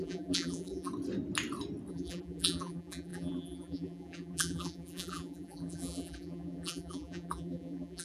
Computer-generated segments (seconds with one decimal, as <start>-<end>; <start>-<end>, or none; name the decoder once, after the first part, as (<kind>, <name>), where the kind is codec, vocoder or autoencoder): 0.0-0.9 (vocoder, BigVGAN v2); 1.9-8.0